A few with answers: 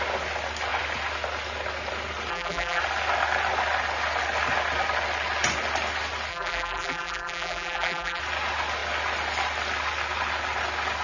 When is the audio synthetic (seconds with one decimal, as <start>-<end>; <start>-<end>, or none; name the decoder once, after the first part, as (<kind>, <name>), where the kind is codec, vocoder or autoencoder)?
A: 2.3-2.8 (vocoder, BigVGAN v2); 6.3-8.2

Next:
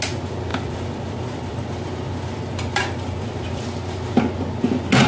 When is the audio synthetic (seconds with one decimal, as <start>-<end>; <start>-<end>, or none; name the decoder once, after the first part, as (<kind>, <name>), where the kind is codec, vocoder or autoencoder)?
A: 0.5-3.6 (vocoder, BigVGAN v2)

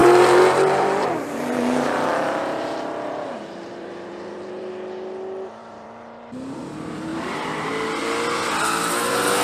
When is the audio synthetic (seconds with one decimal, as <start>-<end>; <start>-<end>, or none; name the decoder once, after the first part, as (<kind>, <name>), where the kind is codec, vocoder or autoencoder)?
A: 0.0-4.7 (vocoder, BigVGAN v2); 5.6-6.6; 7.1-7.7

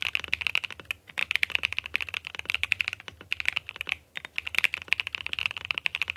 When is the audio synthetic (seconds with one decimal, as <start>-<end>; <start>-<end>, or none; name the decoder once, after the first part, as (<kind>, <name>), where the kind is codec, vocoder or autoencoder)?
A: 5.4-6.2 (vocoder, BigVGAN v2)

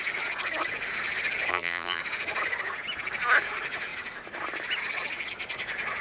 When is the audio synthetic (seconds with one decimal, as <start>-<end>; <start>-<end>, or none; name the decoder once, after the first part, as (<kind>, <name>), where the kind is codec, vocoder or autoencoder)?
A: 1.5-2.0 (vocoder, BigVGAN v2)

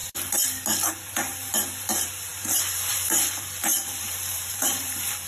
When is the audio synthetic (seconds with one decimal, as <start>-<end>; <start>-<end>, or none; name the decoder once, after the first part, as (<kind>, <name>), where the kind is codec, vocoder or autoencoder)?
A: 1.0-5.3 (vocoder, BigVGAN v2)

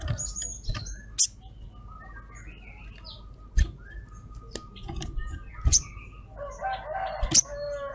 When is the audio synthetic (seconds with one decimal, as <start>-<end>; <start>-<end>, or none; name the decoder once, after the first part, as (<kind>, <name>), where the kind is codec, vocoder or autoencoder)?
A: none